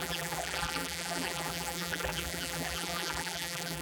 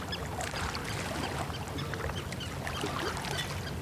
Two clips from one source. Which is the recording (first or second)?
second